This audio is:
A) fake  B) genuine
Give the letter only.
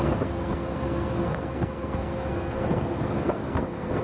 A